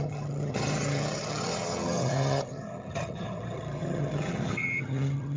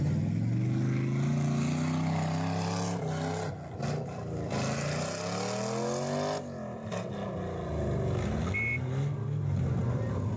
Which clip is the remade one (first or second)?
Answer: first